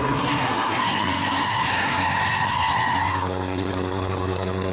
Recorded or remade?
remade